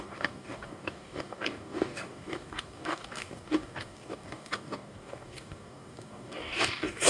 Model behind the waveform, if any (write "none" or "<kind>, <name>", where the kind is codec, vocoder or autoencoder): codec, DAC